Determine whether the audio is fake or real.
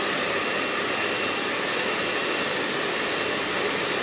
real